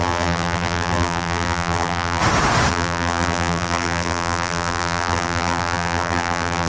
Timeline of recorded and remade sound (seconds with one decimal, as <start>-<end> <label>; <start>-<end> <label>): 0.0-2.2 remade; 2.2-2.7 recorded; 2.7-6.7 remade